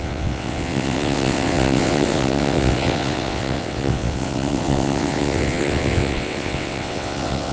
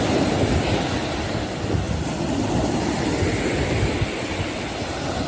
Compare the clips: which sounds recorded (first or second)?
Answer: second